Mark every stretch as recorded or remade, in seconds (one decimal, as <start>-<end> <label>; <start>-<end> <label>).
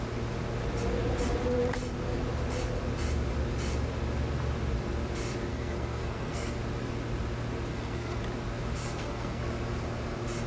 0.0-5.5 recorded; 5.5-6.6 remade; 6.6-7.7 recorded; 7.7-8.2 remade; 8.2-8.8 recorded; 8.8-9.4 remade; 9.4-10.5 recorded